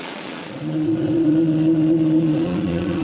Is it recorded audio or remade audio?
remade